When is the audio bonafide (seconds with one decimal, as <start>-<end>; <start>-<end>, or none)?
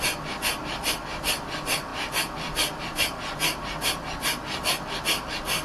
0.0-5.6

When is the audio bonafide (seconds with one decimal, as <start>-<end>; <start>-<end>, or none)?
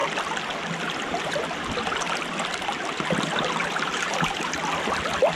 0.0-3.6; 4.6-5.4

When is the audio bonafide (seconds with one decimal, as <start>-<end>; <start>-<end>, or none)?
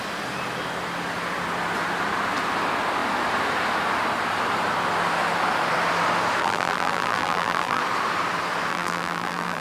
0.0-6.4; 7.8-8.7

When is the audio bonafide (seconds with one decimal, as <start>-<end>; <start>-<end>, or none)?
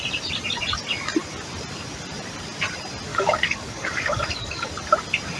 0.0-3.1; 4.7-5.4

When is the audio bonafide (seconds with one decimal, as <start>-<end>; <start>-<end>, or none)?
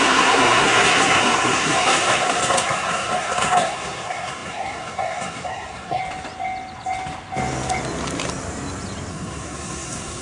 6.0-9.1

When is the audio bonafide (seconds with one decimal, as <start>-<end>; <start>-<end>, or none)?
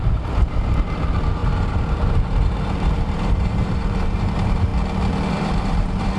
4.7-5.3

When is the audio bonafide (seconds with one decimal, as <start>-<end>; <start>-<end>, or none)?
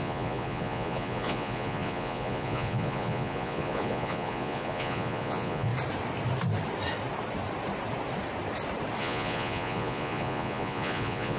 5.7-9.0